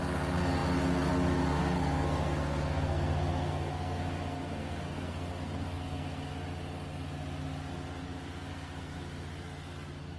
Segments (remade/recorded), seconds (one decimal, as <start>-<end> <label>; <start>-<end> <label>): 0.0-1.6 recorded; 1.6-6.3 remade; 6.3-8.5 recorded; 8.5-9.0 remade; 9.0-10.2 recorded